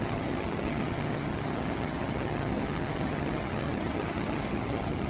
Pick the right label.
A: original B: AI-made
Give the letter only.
B